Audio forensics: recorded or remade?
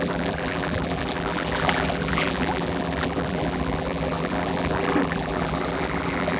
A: remade